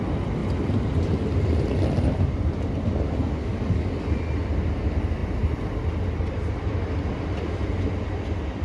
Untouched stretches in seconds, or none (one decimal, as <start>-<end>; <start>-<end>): 0.0-3.4; 3.9-8.6